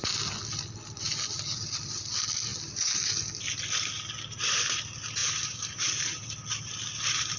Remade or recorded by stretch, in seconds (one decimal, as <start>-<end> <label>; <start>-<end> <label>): 0.0-5.2 recorded; 5.2-5.9 remade; 5.9-7.4 recorded